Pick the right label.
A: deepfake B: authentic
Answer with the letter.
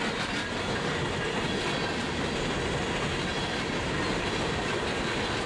B